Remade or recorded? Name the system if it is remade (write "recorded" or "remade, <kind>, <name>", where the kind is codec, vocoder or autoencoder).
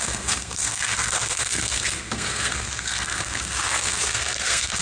remade, codec, SNAC